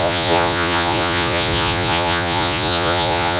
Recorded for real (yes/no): no